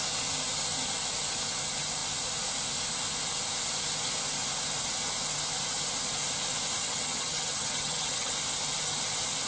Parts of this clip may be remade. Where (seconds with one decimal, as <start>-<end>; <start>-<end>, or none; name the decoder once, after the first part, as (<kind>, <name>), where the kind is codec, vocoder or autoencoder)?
6.8-8.3 (vocoder, HiFi-GAN)